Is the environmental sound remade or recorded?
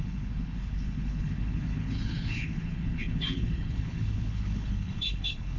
remade